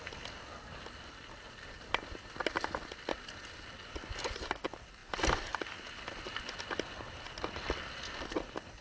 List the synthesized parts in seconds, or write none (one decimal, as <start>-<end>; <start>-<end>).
none